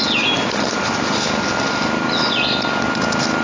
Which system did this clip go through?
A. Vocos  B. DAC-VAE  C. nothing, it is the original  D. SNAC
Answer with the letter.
C